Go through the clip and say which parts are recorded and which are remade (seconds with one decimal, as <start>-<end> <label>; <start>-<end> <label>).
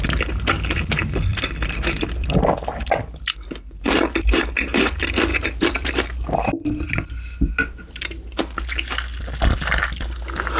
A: 0.0-1.3 recorded; 1.3-2.8 remade; 2.8-5.3 recorded; 5.3-5.9 remade; 5.9-10.6 recorded